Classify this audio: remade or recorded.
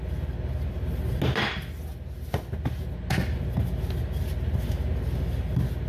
recorded